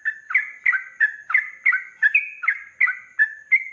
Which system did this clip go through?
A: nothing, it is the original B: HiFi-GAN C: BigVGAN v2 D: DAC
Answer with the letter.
A